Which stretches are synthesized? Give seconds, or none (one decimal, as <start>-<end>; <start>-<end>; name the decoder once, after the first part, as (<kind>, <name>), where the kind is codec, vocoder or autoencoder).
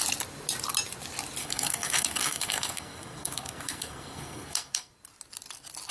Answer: 1.4-4.9 (codec, SNAC)